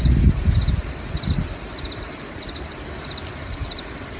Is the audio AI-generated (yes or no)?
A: no